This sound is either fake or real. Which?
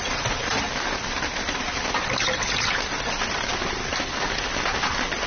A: real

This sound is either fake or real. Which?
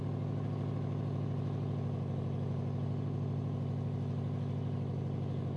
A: real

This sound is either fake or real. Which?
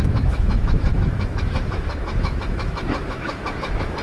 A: fake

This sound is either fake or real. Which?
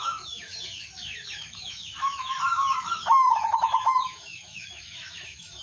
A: fake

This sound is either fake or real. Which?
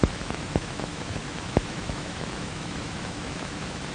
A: fake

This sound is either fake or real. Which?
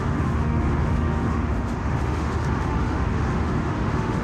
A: fake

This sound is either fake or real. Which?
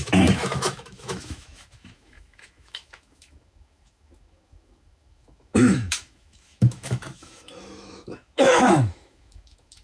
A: fake